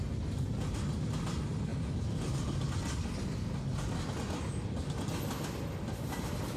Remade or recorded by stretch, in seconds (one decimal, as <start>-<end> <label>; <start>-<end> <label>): 0.0-6.6 recorded